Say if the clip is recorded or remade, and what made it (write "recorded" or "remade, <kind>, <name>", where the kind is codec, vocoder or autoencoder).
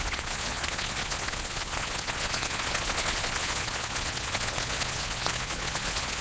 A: remade, vocoder, Vocos